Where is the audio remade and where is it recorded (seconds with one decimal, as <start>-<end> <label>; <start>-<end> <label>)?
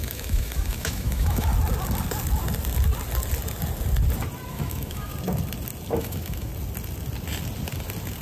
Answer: 0.0-1.5 remade; 1.5-4.5 recorded; 4.5-5.1 remade; 5.1-6.0 recorded; 6.0-6.5 remade; 6.5-8.2 recorded